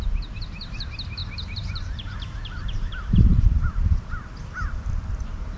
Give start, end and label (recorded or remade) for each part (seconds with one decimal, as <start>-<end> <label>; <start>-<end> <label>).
0.0-1.2 recorded; 1.2-3.9 remade; 3.9-5.6 recorded